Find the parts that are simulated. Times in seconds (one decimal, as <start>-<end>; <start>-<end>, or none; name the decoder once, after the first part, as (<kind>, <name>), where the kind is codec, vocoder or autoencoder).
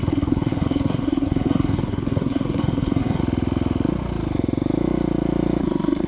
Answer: 0.0-3.2 (codec, SNAC); 5.6-6.1